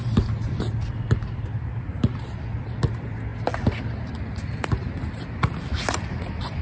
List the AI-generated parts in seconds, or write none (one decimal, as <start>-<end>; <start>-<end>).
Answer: none